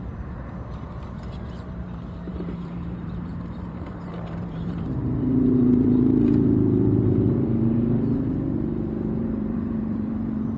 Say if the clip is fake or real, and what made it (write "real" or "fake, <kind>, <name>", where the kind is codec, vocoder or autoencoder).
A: fake, vocoder, BigVGAN v2